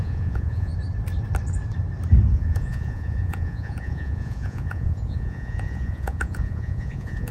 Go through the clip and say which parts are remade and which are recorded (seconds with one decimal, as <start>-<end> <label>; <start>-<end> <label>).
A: 0.0-0.7 remade; 0.7-2.3 recorded; 2.3-7.3 remade